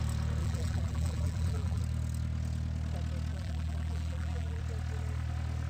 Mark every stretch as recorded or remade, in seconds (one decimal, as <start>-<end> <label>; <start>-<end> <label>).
0.0-0.4 recorded; 0.4-1.8 remade; 1.8-3.3 recorded; 3.3-4.6 remade; 4.6-5.7 recorded

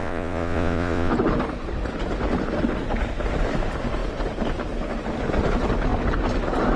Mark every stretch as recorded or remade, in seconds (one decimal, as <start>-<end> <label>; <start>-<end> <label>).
0.0-1.1 remade; 1.1-6.8 recorded

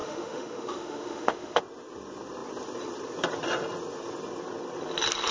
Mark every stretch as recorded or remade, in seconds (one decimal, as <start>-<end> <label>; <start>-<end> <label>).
0.0-1.6 remade; 1.6-5.3 recorded

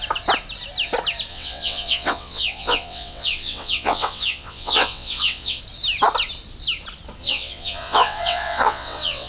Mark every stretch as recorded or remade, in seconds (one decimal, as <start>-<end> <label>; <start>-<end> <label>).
0.0-1.3 recorded; 1.3-5.6 remade; 5.6-7.2 recorded; 7.2-9.3 remade

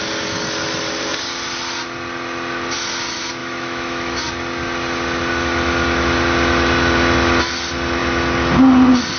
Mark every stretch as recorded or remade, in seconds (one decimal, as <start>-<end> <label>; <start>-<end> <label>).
0.0-3.4 recorded; 3.4-4.2 remade; 4.2-9.2 recorded